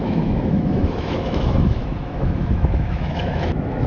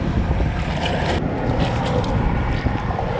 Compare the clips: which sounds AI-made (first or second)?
first